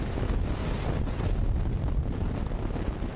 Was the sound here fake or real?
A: real